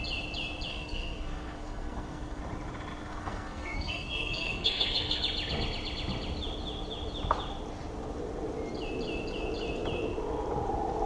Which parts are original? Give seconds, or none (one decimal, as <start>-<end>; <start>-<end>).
0.0-0.7; 2.4-3.1; 5.2-11.1